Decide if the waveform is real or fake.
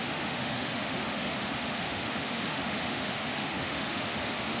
fake